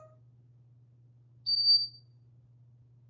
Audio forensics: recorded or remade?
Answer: recorded